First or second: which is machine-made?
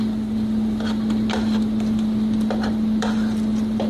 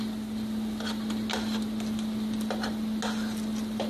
first